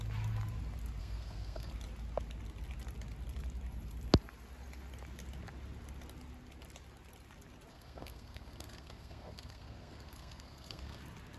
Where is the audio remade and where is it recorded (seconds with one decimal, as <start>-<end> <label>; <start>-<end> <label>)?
0.0-1.0 recorded; 1.0-1.7 remade; 1.7-7.7 recorded; 7.7-11.0 remade; 11.0-11.4 recorded